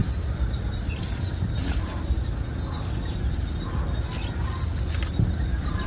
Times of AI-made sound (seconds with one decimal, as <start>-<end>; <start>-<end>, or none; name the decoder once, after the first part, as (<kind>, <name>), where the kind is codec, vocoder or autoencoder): none